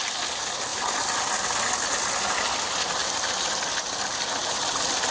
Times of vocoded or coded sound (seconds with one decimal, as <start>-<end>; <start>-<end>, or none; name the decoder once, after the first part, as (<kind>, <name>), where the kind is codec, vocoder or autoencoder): none